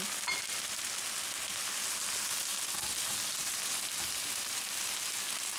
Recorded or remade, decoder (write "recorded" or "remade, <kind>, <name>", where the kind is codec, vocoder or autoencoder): recorded